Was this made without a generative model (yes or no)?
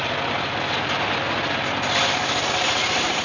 yes